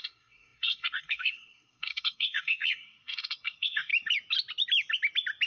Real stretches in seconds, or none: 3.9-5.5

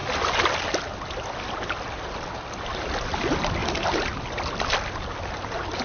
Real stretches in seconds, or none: 0.0-5.8

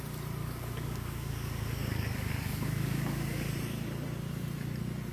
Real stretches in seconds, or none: 0.0-0.4; 3.5-5.1

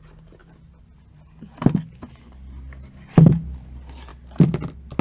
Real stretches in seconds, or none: 0.0-5.0

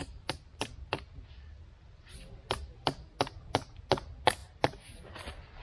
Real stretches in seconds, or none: 0.0-5.6